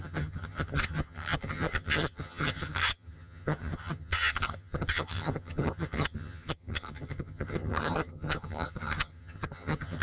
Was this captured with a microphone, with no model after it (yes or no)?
no